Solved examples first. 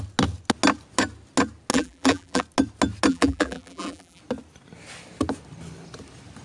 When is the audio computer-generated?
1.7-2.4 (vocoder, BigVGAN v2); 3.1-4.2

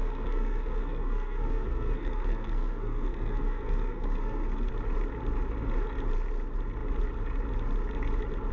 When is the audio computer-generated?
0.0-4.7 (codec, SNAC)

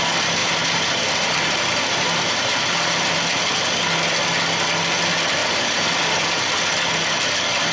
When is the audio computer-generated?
0.4-3.1 (vocoder, BigVGAN v2); 5.4-5.9

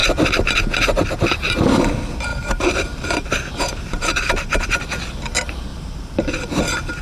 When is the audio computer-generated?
2.3-4.5 (vocoder, BigVGAN v2); 5.7-6.6

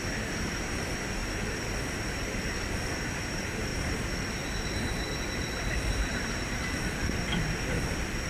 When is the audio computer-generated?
0.0-1.2 (vocoder, BigVGAN v2); 2.1-8.3

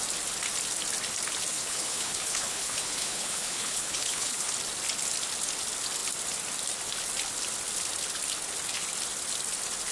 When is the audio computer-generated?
1.5-4.5 (codec, HILCodec)

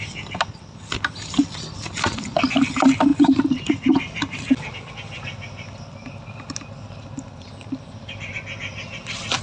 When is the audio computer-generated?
3.1-4.9 (vocoder, BigVGAN v2)

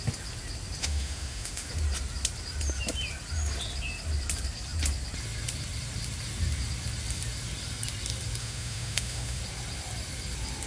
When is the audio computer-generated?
0.8-1.7 (autoencoder, DAC-VAE); 8.4-9.4